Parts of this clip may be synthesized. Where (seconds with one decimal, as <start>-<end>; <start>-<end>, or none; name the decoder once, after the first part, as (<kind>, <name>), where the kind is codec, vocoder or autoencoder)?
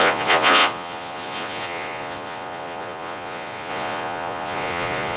0.0-5.2 (vocoder, Vocos)